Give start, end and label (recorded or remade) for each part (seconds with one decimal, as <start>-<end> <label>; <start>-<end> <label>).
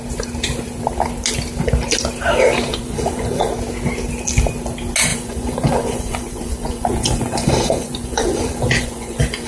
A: 0.0-2.7 recorded; 2.7-3.5 remade; 3.5-5.1 recorded; 5.1-9.5 remade